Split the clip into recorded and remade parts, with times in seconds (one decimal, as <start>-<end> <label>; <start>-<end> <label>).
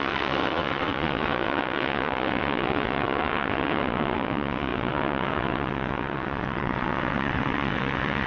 0.0-8.3 remade